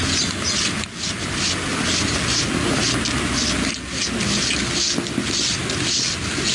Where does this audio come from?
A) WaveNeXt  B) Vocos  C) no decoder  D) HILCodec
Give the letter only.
C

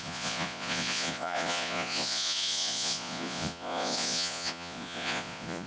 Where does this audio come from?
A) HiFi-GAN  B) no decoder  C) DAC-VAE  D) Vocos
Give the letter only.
D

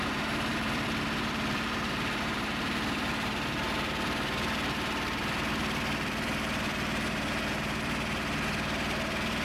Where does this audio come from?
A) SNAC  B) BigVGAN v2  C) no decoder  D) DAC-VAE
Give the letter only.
B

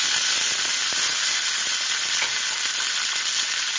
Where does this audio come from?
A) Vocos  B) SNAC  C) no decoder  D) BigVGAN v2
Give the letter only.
C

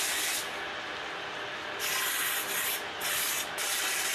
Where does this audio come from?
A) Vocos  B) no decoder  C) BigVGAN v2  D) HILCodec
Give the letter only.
B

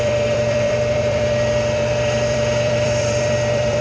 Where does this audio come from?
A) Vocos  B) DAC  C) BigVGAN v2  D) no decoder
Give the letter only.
C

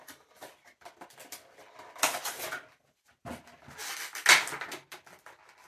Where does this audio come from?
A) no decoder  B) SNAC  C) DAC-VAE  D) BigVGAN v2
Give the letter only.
A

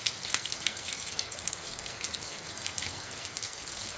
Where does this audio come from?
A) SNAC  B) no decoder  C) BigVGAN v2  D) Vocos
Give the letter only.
A